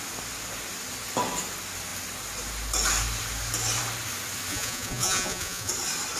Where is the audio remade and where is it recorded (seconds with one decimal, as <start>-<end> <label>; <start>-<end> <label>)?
0.0-4.5 recorded; 4.5-5.7 remade; 5.7-6.2 recorded